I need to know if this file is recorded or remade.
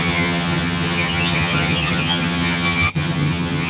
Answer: remade